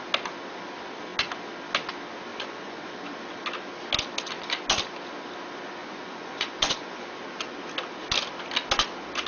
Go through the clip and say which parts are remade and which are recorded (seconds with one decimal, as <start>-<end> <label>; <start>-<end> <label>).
0.0-2.3 recorded; 2.3-2.9 remade; 2.9-5.8 recorded; 5.8-7.1 remade; 7.1-9.3 recorded